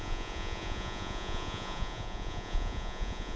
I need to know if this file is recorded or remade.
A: remade